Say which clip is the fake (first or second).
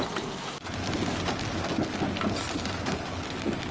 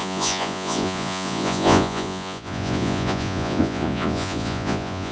second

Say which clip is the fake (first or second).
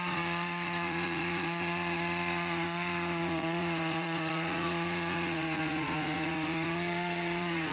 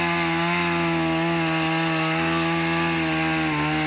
first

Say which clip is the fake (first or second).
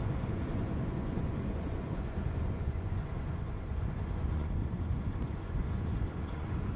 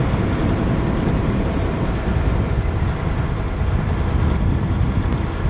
first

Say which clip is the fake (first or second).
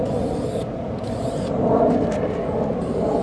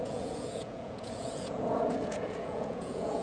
second